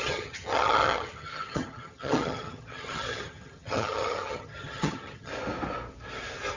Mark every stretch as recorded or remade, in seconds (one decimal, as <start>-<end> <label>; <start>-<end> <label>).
0.0-5.3 remade; 5.3-6.6 recorded